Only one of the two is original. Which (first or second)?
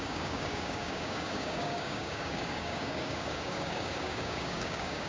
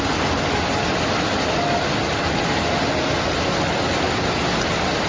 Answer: second